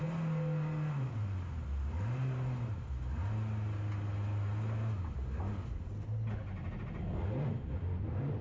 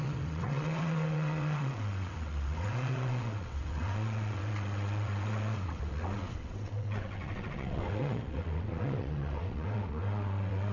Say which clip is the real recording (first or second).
first